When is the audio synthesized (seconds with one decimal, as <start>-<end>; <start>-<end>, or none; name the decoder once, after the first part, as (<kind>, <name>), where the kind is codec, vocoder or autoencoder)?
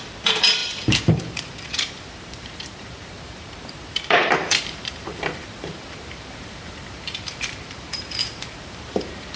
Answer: 0.0-9.4 (vocoder, BigVGAN v2)